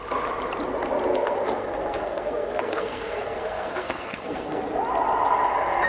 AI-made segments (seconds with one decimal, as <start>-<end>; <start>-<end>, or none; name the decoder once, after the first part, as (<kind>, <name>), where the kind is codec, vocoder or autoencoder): 1.1-4.6 (codec, SNAC)